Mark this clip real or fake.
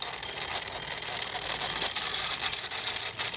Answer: real